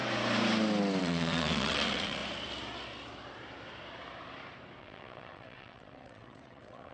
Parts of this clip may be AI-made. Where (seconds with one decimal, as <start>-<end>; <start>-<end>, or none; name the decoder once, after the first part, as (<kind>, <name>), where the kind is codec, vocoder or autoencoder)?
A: 1.0-2.2 (vocoder, WaveNeXt); 4.8-6.9